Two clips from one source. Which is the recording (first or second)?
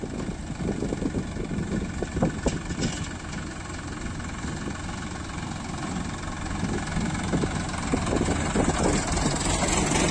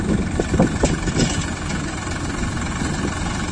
first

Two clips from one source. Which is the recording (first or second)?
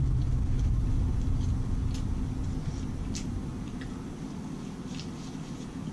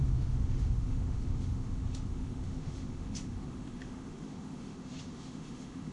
first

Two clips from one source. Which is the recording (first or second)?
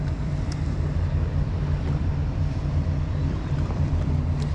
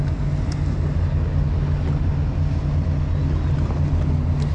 second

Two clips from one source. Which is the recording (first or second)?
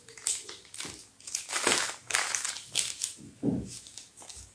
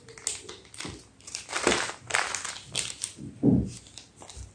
second